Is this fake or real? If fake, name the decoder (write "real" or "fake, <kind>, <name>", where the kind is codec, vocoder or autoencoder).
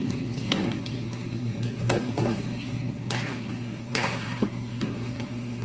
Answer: fake, codec, SNAC